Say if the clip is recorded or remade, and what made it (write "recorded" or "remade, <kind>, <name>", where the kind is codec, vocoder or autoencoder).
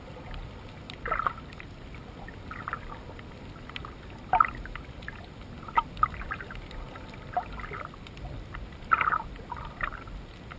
recorded